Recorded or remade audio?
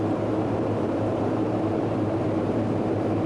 remade